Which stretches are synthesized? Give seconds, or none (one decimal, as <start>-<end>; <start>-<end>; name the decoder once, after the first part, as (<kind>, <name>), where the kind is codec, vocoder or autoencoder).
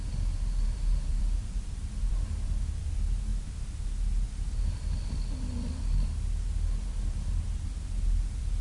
1.1-2.9 (vocoder, BigVGAN v2)